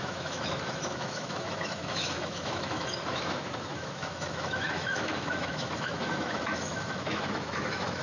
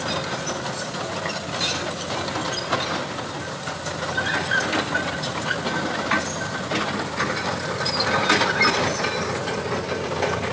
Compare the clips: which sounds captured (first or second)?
second